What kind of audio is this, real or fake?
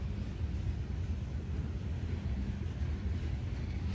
real